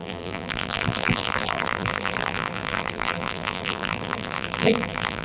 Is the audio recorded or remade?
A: remade